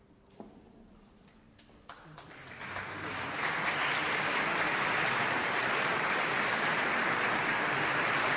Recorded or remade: recorded